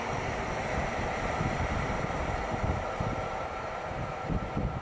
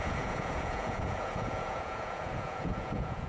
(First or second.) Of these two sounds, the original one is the first